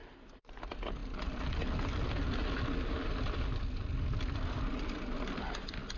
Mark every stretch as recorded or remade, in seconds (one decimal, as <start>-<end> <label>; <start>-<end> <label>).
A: 0.0-6.0 recorded